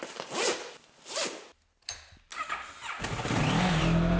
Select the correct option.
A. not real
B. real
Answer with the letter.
B